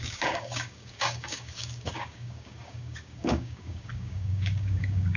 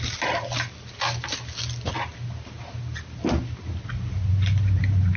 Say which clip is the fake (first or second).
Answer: first